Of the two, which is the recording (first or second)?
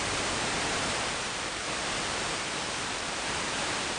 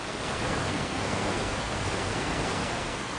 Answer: first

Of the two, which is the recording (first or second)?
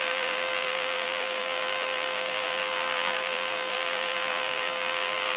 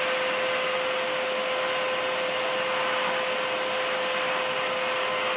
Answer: second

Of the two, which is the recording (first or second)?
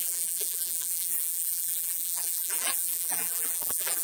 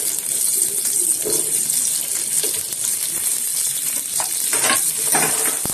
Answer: second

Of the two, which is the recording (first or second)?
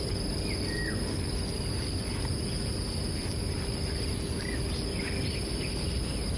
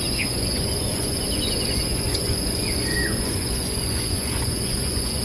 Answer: first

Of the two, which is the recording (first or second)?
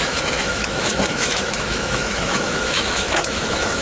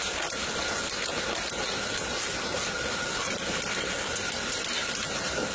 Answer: second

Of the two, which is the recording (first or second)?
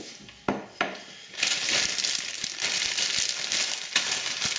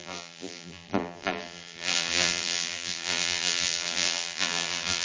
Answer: first